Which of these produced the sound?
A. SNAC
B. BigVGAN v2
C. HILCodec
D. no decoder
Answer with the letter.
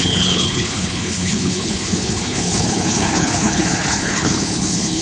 C